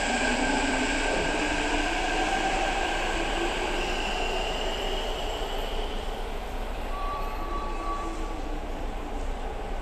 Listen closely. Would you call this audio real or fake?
fake